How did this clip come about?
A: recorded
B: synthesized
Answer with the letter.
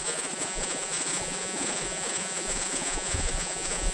B